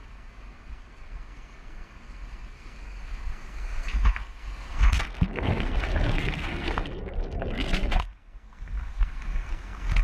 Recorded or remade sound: remade